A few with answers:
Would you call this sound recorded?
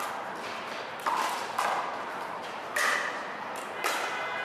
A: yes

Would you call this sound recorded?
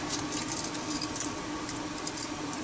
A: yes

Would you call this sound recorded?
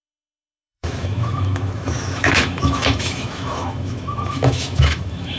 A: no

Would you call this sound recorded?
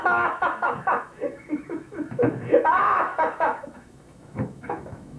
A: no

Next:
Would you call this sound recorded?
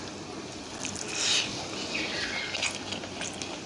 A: yes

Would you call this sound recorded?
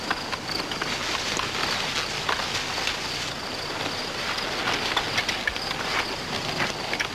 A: yes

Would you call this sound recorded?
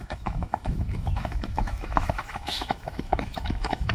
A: no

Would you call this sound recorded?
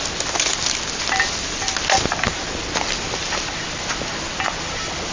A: yes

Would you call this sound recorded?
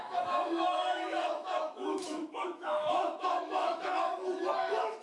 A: no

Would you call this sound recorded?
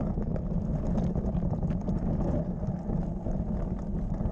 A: yes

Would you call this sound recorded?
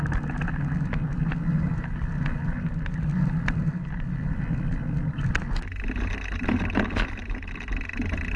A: yes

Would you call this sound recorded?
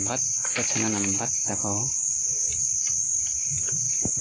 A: yes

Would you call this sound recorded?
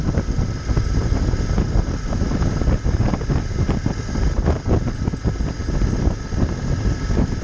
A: yes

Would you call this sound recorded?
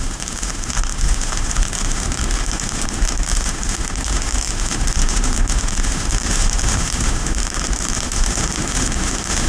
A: no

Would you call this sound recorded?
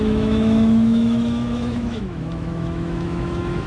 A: no